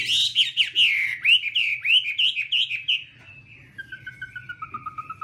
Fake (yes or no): no